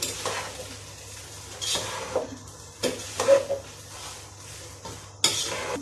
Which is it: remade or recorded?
recorded